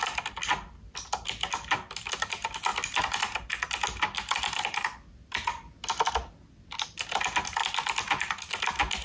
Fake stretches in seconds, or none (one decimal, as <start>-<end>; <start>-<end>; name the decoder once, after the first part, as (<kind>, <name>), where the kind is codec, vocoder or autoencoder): none